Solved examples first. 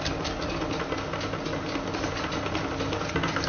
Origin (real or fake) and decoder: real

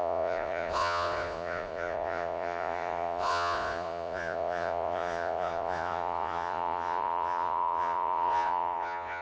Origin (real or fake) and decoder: fake, vocoder, Vocos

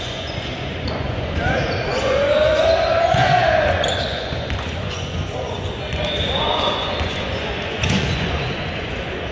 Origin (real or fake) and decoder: fake, vocoder, Vocos